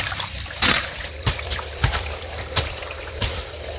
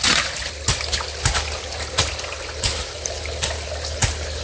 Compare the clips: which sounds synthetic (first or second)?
first